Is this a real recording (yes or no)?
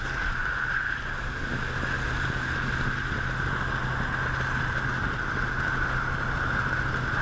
yes